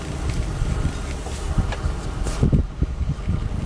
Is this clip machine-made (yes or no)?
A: no